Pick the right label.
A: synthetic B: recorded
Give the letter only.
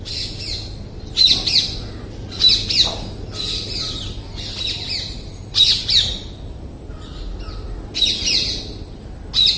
B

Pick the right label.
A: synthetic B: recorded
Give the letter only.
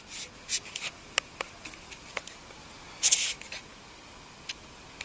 B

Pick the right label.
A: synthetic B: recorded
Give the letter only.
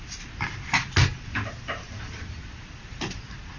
B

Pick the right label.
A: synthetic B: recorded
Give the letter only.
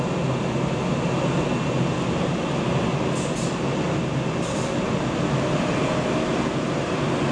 B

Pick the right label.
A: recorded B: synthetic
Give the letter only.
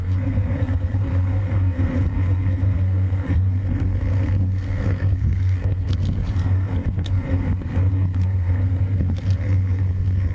B